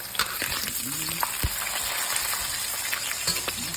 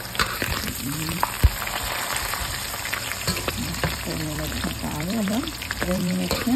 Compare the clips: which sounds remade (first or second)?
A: second